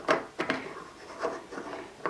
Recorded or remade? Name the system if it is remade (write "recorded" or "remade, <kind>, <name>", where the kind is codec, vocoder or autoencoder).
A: recorded